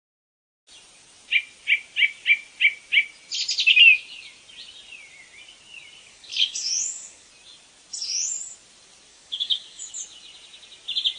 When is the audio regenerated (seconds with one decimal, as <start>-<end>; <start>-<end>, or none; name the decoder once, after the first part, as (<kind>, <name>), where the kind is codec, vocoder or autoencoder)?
6.0-7.3 (codec, DAC); 9.1-9.9